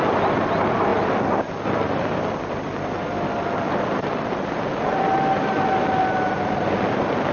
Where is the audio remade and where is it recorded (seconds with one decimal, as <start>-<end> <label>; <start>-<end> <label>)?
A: 0.0-7.3 recorded